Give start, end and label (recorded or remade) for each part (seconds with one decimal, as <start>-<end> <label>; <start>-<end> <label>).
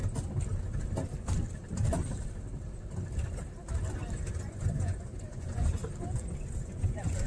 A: 0.0-4.4 recorded; 4.4-5.8 remade; 5.8-6.6 recorded; 6.6-7.3 remade